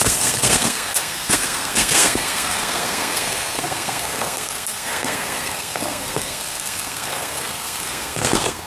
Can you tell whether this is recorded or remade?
remade